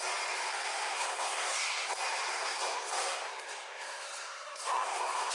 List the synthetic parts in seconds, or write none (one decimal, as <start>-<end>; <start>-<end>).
0.5-1.9; 2.3-5.3